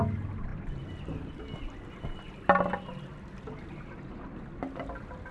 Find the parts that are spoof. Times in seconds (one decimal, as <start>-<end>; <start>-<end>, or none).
none